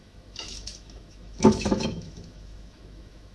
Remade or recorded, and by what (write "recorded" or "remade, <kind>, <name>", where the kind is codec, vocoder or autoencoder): remade, autoencoder, DAC-VAE